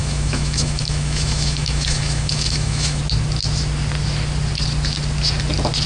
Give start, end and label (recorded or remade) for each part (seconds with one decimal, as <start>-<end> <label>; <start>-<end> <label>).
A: 0.0-3.0 remade; 3.0-5.9 recorded